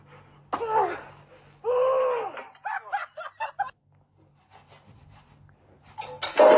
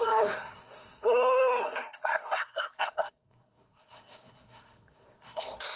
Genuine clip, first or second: first